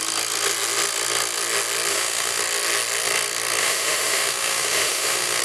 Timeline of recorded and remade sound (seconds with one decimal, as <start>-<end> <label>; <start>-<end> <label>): 0.0-1.9 recorded; 1.9-2.4 remade; 2.4-3.6 recorded; 3.6-5.4 remade